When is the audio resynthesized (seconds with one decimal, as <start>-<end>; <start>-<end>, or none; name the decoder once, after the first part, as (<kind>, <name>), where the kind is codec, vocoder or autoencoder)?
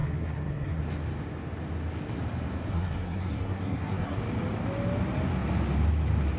0.0-0.8 (codec, SNAC); 2.7-4.2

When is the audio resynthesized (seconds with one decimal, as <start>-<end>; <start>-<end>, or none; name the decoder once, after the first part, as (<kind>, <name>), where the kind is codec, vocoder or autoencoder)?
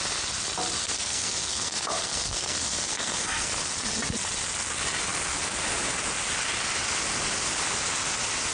0.8-3.5 (codec, SNAC)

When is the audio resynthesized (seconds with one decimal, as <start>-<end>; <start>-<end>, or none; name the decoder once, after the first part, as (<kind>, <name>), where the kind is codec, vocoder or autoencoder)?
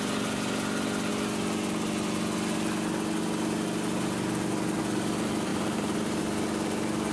5.5-6.2 (vocoder, BigVGAN v2)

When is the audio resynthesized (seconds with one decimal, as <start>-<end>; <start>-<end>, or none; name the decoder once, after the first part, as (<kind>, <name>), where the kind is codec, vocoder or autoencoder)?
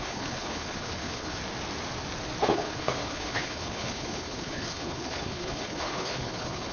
0.0-1.4 (codec, HILCodec); 2.4-6.7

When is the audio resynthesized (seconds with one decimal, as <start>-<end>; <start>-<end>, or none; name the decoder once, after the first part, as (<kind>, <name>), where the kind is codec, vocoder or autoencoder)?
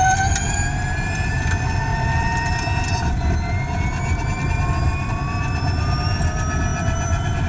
1.9-2.6 (vocoder, BigVGAN v2); 6.7-7.5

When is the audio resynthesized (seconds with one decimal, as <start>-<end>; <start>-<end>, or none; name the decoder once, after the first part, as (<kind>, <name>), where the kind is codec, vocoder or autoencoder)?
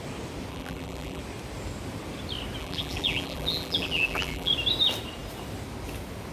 0.5-1.2 (vocoder, BigVGAN v2); 2.6-4.5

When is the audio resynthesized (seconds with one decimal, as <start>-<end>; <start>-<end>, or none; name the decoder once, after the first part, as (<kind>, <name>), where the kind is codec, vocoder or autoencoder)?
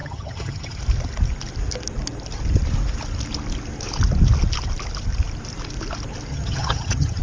0.0-0.8 (vocoder, HiFi-GAN); 6.3-7.2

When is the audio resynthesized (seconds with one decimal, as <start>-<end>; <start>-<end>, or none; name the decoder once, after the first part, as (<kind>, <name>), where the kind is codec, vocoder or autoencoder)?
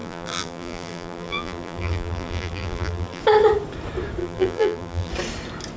0.0-3.2 (vocoder, BigVGAN v2); 4.2-5.1